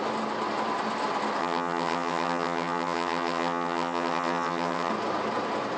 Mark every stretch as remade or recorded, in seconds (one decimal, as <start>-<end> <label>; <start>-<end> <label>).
0.0-1.4 recorded; 1.4-4.9 remade; 4.9-5.8 recorded